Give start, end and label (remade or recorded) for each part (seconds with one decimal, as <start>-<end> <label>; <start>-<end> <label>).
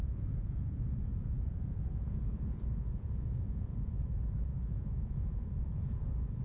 0.0-6.4 remade